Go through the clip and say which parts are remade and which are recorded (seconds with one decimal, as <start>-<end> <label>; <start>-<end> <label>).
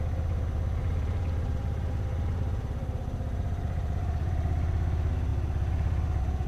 0.0-0.8 recorded; 0.8-4.3 remade; 4.3-6.5 recorded